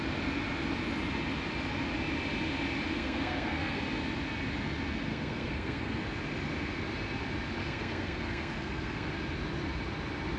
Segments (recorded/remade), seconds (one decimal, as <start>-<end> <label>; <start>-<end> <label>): 0.0-2.9 recorded; 2.9-3.8 remade; 3.8-5.1 recorded; 5.1-6.0 remade; 6.0-7.6 recorded; 7.6-9.1 remade; 9.1-10.4 recorded